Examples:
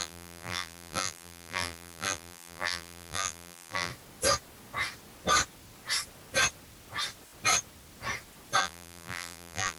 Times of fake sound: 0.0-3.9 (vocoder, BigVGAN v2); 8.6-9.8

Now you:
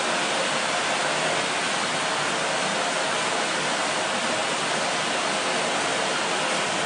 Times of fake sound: none